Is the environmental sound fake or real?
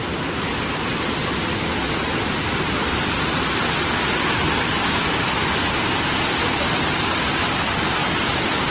real